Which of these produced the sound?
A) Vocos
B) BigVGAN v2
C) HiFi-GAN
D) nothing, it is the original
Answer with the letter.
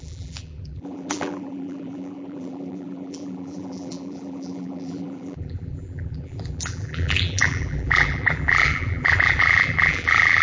B